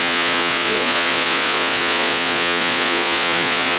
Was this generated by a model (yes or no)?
yes